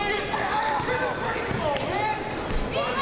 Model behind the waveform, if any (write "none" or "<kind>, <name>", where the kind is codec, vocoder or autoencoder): none